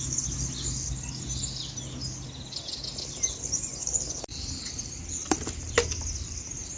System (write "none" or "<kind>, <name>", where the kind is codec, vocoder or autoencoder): none